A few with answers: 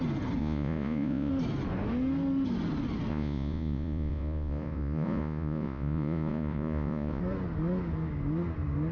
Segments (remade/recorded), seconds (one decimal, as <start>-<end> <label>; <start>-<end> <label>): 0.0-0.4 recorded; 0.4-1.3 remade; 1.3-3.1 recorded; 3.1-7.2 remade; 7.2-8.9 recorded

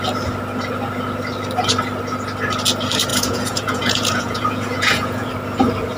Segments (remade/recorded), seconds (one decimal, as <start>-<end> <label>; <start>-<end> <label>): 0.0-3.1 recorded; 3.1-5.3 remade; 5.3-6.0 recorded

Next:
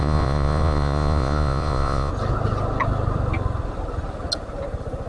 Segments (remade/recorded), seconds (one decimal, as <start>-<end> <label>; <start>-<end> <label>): 0.0-2.1 remade; 2.1-5.1 recorded